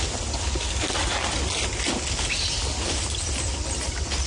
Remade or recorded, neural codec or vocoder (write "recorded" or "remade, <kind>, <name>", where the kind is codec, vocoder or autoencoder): recorded